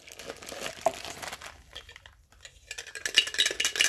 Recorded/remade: recorded